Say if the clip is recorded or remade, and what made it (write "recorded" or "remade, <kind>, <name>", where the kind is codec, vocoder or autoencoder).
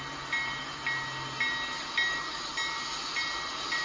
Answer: recorded